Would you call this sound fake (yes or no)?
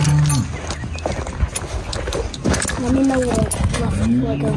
no